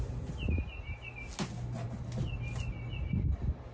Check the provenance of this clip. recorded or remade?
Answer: recorded